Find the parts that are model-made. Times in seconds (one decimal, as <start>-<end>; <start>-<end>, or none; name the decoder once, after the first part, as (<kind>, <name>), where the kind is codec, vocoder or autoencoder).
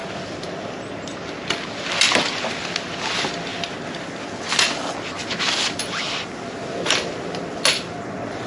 none